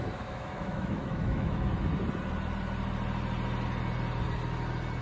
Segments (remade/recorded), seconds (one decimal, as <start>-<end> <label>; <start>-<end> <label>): 0.0-1.7 remade; 1.7-5.0 recorded